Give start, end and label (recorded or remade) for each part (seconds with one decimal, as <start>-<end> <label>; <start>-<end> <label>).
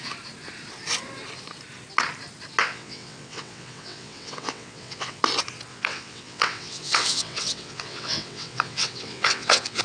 0.0-2.6 recorded; 2.6-5.2 remade; 5.2-5.7 recorded; 5.7-9.8 remade